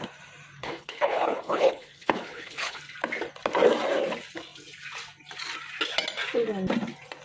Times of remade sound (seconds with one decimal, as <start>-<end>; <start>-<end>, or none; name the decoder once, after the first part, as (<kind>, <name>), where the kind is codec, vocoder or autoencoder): 0.6-2.8 (codec, HILCodec)